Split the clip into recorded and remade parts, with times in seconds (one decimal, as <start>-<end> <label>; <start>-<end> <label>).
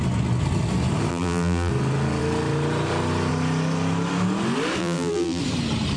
0.0-1.1 recorded; 1.1-1.7 remade; 1.7-4.8 recorded; 4.8-5.4 remade; 5.4-6.0 recorded